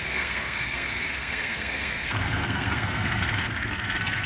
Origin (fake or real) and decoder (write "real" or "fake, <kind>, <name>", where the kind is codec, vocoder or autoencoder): fake, codec, SNAC